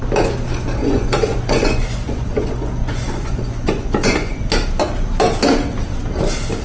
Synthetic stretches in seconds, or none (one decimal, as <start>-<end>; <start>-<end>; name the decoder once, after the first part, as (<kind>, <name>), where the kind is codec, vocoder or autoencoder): 0.8-4.5 (vocoder, Vocos)